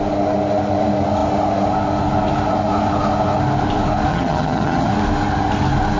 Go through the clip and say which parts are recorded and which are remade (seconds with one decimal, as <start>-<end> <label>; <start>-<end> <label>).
0.0-4.1 recorded; 4.1-4.9 remade; 4.9-6.0 recorded